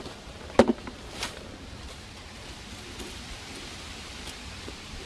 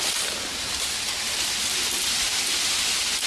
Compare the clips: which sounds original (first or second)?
second